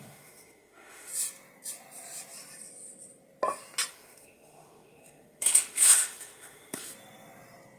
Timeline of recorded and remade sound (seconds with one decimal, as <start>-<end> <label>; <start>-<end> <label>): 0.0-1.1 remade; 1.1-3.9 recorded; 3.9-6.9 remade; 6.9-7.8 recorded